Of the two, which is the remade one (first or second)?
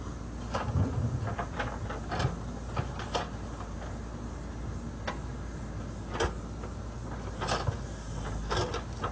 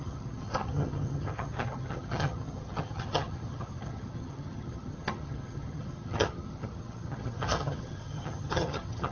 second